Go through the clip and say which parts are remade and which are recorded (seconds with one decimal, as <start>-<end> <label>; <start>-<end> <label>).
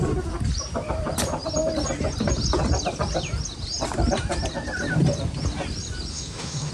0.0-6.1 recorded; 6.1-6.7 remade